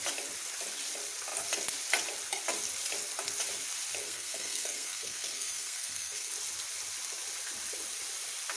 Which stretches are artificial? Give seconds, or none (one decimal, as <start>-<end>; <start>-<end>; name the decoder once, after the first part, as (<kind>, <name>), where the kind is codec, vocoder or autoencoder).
4.0-6.3 (codec, SNAC)